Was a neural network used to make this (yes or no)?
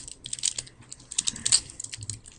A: no